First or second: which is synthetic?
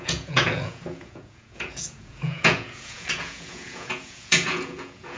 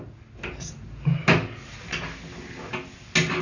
first